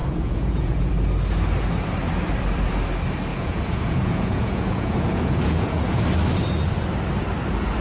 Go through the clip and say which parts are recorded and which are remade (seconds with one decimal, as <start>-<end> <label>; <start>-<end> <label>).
0.0-0.9 remade; 0.9-3.3 recorded; 3.3-6.0 remade; 6.0-7.8 recorded